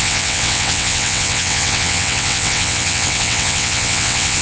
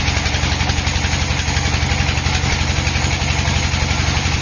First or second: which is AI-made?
first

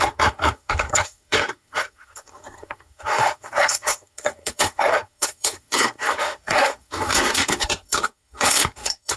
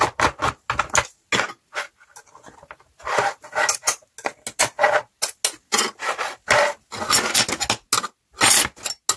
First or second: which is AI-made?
first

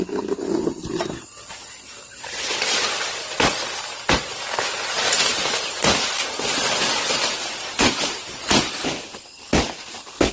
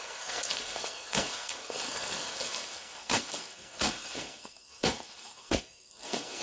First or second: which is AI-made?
second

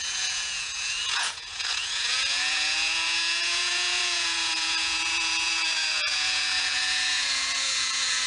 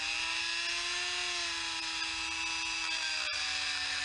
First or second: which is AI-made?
first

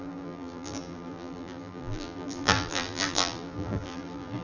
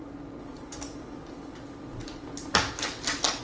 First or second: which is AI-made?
first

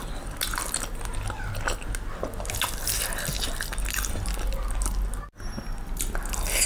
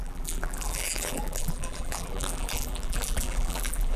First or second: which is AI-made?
second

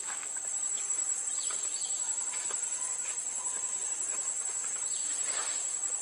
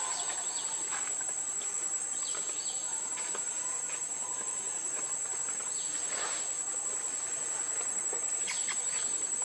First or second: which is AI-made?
first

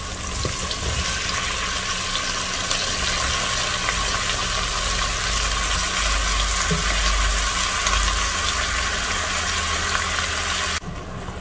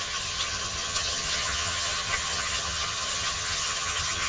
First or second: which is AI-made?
second